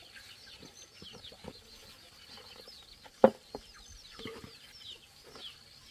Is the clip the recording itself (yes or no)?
yes